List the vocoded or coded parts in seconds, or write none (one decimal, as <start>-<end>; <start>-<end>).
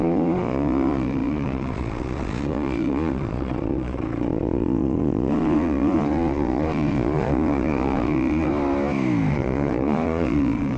0.0-8.5; 9.3-10.8